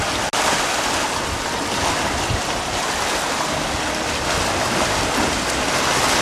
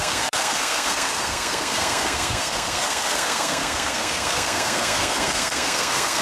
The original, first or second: first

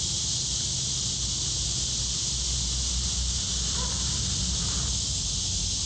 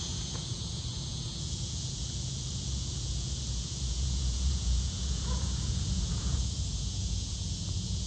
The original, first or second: first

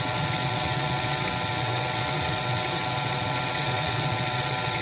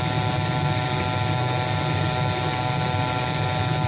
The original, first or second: second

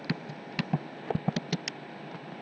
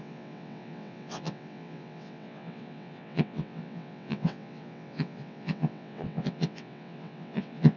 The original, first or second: first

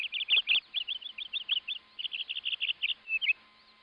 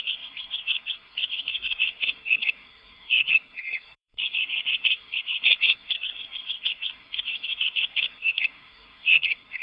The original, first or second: first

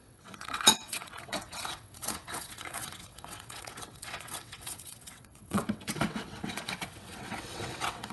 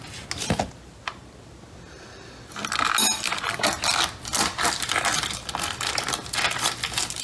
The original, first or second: second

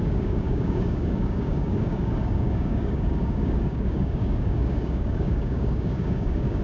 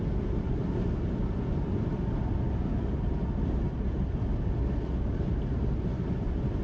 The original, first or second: second